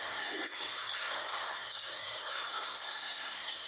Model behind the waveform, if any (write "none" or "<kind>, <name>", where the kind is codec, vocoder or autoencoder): codec, SNAC